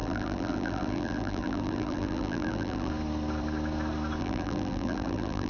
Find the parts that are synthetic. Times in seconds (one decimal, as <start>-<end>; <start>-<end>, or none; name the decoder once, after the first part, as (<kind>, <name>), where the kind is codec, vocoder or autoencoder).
0.0-2.9 (vocoder, BigVGAN v2); 4.2-5.5